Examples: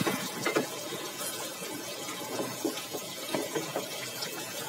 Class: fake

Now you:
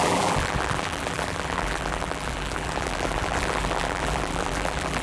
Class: fake